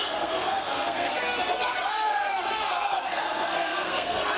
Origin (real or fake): fake